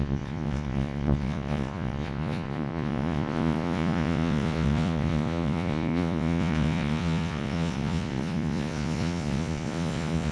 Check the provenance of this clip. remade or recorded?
remade